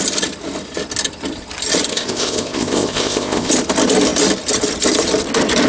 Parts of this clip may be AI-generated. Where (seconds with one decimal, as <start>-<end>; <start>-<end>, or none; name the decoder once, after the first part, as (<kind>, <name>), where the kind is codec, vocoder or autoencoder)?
1.9-3.5 (codec, ZipCodec)